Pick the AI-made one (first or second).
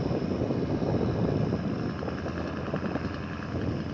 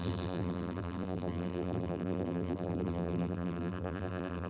second